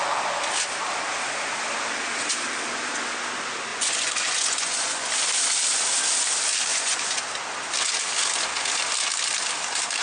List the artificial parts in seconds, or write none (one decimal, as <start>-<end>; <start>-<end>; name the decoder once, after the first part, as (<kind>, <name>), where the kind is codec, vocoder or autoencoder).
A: 3.7-5.1 (vocoder, Vocos); 6.7-7.2